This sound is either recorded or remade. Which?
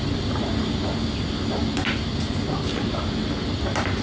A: recorded